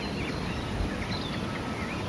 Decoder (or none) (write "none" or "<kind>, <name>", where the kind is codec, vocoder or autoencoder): none